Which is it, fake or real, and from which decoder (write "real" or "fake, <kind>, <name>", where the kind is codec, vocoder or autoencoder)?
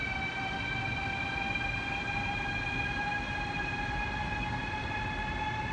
real